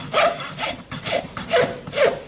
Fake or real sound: real